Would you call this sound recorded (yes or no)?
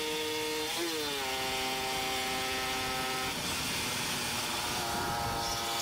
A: yes